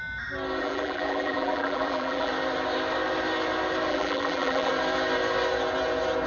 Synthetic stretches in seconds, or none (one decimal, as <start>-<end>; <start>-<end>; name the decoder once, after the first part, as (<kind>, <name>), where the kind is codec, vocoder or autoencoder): 0.6-2.3 (vocoder, BigVGAN v2); 3.9-4.7

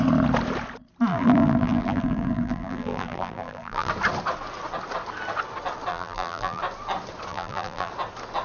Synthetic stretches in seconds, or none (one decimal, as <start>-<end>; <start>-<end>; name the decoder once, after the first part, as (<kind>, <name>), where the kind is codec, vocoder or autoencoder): 1.1-3.9 (vocoder, BigVGAN v2); 5.9-6.6; 7.3-7.9